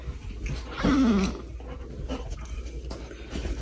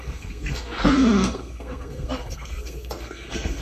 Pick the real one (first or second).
first